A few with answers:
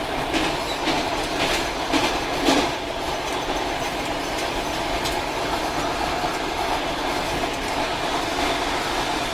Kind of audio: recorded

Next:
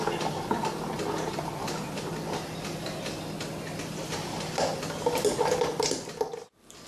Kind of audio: recorded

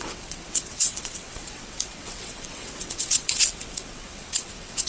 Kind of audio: remade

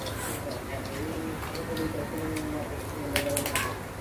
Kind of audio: recorded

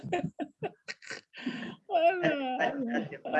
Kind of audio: recorded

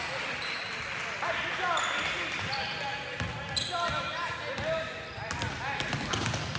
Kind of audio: recorded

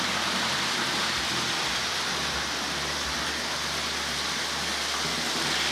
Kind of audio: recorded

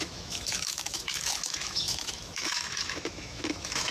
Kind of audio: remade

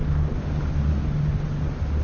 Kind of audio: recorded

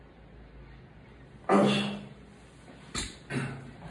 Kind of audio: recorded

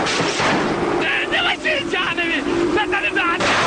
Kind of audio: recorded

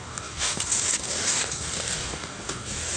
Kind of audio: remade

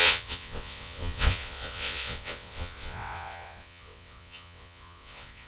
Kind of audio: remade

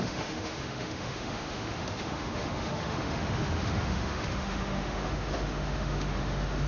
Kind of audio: remade